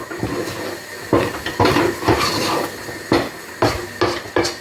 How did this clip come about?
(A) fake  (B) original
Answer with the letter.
B